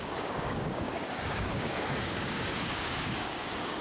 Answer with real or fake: fake